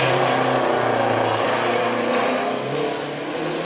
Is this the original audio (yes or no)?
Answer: yes